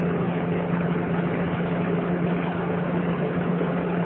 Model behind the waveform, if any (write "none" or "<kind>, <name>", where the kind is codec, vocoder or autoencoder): codec, HILCodec